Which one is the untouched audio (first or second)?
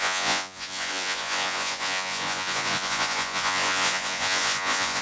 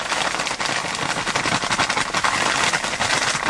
second